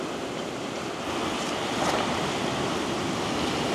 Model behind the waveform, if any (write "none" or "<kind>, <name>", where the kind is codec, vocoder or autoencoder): none